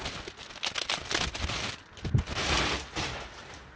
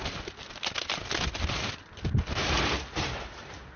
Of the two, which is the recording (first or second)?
first